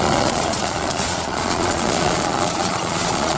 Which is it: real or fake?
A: fake